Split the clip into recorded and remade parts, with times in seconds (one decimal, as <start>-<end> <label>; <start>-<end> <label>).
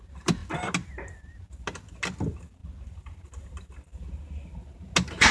0.0-2.6 recorded; 2.6-3.6 remade; 3.6-5.3 recorded